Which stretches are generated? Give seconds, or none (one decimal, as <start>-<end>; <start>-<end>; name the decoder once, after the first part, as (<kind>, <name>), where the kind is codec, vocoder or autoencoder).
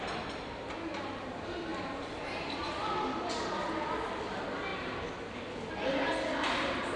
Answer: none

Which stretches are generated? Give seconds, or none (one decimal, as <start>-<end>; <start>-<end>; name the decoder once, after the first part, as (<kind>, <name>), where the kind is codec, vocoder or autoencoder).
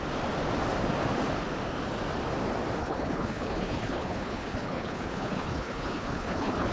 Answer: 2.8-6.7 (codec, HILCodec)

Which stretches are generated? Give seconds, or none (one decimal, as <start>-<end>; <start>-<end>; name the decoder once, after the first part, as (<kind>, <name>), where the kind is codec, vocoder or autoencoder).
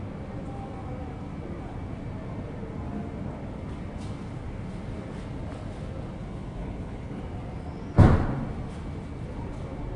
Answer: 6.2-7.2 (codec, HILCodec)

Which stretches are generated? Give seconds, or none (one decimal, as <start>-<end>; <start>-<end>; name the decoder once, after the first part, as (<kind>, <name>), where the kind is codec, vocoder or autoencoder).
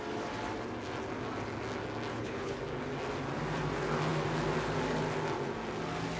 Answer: 2.1-2.6 (codec, HILCodec)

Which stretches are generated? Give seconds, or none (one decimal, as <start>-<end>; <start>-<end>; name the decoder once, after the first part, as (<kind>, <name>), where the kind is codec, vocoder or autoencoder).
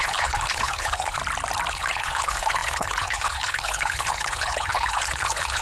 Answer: 0.0-1.2 (codec, HILCodec); 1.7-5.6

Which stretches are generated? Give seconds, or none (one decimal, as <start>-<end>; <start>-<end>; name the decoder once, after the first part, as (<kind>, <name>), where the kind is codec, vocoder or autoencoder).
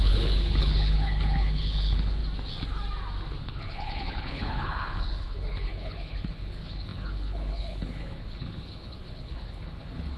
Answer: 0.0-2.2 (codec, HILCodec); 3.4-10.2